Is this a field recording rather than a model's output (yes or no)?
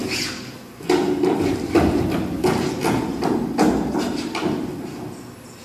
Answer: yes